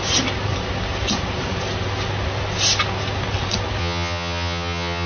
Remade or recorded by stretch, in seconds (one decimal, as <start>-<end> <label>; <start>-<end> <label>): 0.0-3.8 recorded; 3.8-5.1 remade